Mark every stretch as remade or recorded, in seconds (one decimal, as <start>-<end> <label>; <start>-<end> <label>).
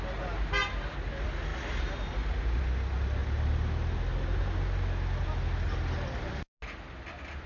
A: 0.0-7.5 recorded